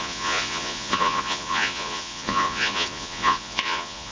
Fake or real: fake